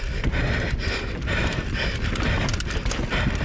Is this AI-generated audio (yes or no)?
no